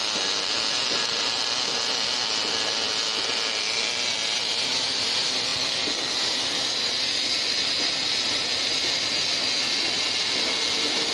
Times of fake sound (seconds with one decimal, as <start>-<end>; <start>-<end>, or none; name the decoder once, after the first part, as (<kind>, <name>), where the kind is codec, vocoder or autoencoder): none